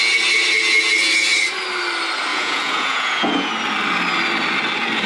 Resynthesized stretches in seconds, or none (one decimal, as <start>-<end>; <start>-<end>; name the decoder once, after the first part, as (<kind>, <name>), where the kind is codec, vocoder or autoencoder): 2.3-3.5 (vocoder, Vocos)